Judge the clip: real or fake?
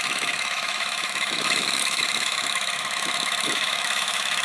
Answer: fake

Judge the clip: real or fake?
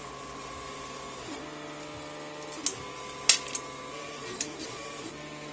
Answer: real